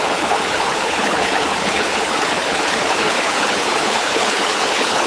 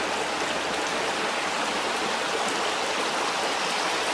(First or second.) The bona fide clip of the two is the second